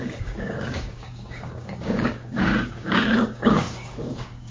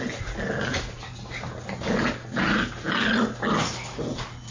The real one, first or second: second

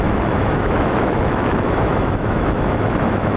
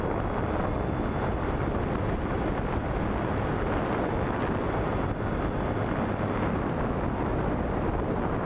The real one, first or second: second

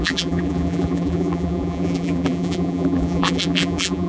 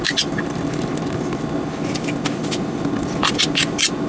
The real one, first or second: second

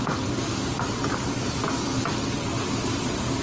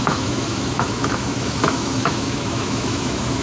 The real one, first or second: first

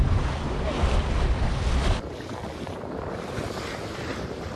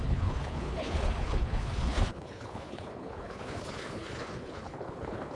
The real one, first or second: first